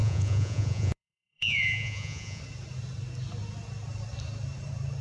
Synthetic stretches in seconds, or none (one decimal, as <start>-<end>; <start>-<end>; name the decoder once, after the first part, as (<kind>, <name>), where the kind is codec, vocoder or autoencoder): 0.0-2.4 (vocoder, Vocos)